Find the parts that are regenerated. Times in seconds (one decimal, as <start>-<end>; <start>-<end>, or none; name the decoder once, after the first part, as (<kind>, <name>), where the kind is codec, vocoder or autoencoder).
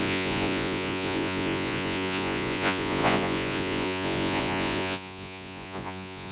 0.0-6.3 (vocoder, Vocos)